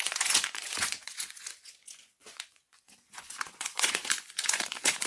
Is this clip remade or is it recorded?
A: remade